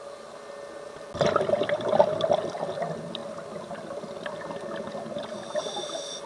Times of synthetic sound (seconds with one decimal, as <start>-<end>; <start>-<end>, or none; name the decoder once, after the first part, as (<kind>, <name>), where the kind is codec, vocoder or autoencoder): none